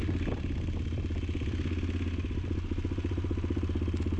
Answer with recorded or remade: recorded